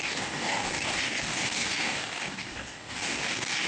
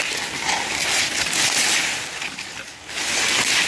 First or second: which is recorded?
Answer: second